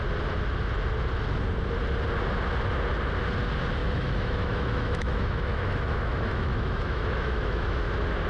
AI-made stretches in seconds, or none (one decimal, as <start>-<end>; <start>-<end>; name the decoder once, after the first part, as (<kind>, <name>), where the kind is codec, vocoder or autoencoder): 3.8-7.8 (autoencoder, DAC-VAE)